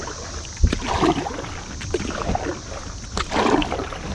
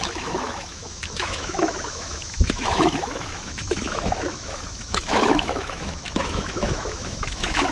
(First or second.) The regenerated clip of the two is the second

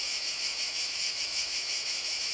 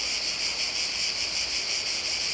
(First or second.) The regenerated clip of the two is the first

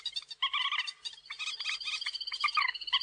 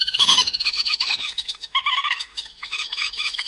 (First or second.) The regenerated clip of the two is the second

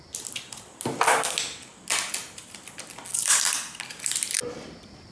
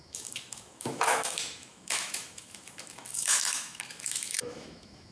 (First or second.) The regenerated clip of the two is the second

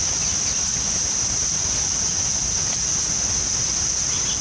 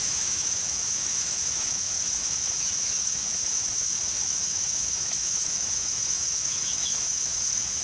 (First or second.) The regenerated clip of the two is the second